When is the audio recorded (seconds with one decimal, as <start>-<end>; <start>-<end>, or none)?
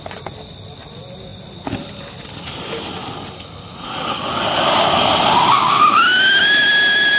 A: 0.0-7.2